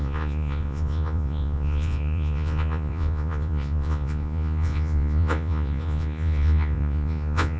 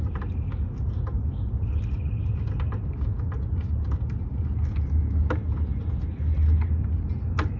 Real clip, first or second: second